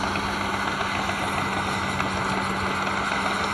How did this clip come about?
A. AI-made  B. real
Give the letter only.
B